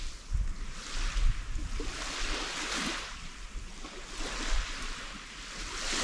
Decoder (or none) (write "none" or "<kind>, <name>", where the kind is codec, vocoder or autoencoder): none